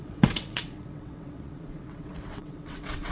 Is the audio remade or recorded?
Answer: remade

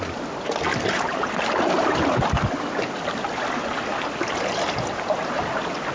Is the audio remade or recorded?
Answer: recorded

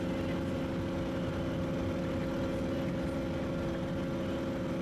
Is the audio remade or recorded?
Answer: recorded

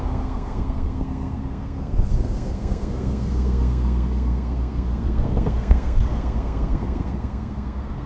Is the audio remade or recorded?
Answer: remade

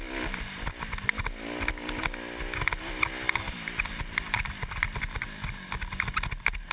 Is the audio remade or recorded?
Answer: recorded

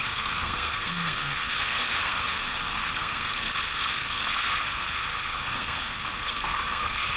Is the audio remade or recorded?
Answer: remade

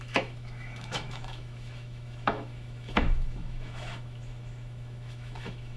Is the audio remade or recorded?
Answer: remade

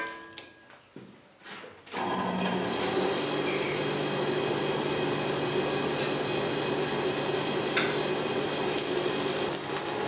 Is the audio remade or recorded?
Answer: recorded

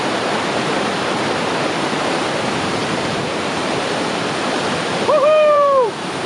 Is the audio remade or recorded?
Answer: remade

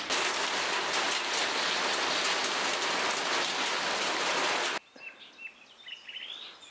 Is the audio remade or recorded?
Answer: recorded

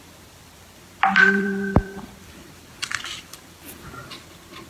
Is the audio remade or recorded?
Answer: remade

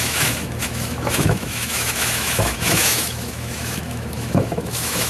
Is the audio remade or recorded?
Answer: remade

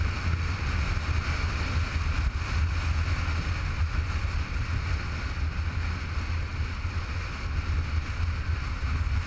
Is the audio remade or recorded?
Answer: recorded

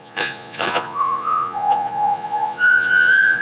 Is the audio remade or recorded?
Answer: remade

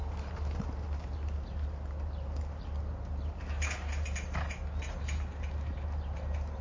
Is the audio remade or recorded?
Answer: recorded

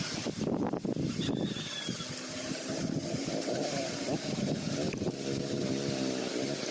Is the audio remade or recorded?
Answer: recorded